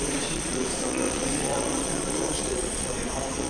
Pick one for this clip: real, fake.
fake